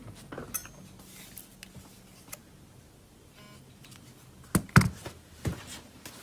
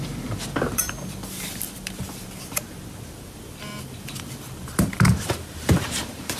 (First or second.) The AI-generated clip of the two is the second